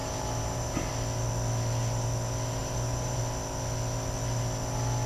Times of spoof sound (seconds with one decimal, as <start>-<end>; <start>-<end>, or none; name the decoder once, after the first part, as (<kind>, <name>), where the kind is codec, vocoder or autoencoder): 0.0-0.9 (vocoder, BigVGAN v2); 2.6-3.2